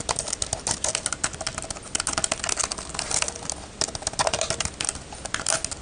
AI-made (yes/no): no